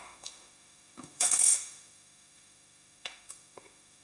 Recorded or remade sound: remade